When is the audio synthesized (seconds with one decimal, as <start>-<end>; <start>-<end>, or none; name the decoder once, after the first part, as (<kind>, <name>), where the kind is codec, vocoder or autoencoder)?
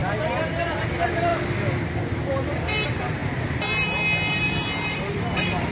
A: none